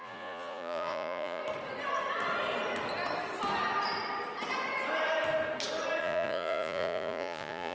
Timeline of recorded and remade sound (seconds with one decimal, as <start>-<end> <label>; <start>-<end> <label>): 0.0-1.4 remade; 1.4-6.0 recorded; 6.0-7.7 remade